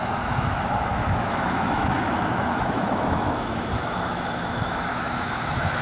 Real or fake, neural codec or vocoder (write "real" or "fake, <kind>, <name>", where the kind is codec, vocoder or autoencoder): fake, autoencoder, DAC-VAE